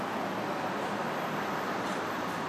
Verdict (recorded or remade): recorded